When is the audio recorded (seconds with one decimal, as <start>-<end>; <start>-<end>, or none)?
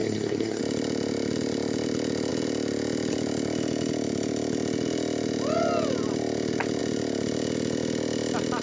0.6-8.6